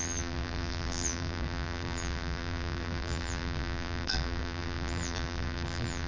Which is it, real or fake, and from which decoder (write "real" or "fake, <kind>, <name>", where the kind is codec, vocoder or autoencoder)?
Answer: fake, vocoder, BigVGAN v2